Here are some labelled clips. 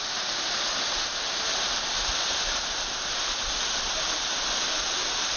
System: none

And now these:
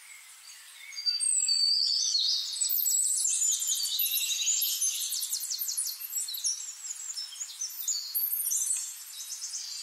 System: none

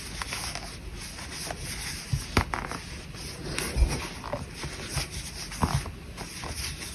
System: none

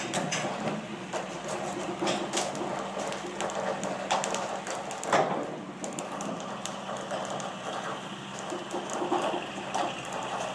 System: none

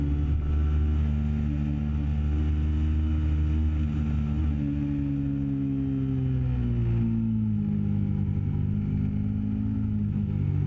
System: none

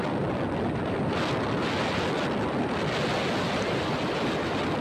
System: none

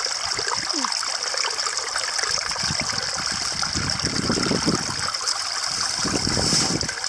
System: none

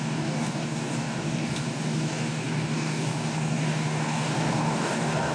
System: codec, DAC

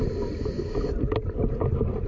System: none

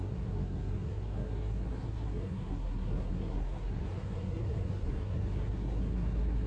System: codec, SNAC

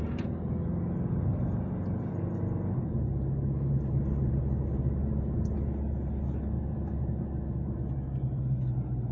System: none